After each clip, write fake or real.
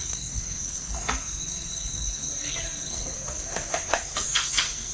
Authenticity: fake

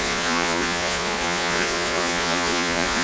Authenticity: fake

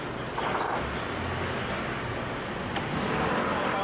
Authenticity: real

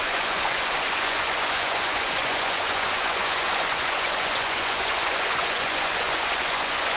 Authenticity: fake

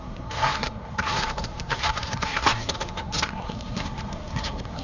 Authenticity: fake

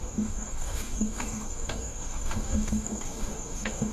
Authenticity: fake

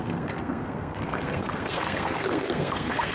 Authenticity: fake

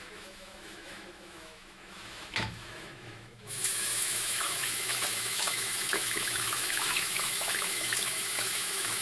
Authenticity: fake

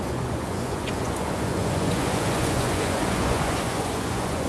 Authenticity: fake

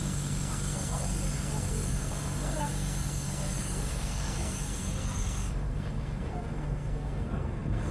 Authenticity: fake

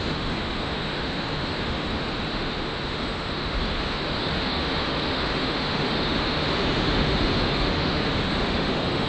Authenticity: fake